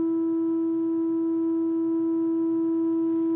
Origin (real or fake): real